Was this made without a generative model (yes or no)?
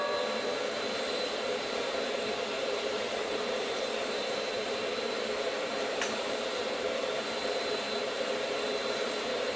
no